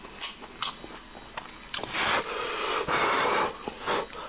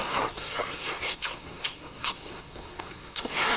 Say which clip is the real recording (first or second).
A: first